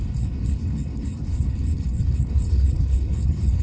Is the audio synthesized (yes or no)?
yes